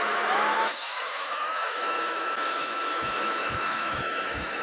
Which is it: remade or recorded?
remade